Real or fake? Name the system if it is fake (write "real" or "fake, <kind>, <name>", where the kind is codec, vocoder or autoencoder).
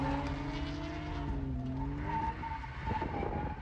real